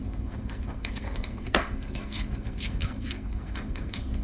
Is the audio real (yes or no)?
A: no